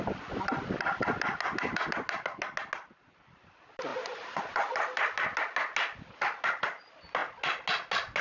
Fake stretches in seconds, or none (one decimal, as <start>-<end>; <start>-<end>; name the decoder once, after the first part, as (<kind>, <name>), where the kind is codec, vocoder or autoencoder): none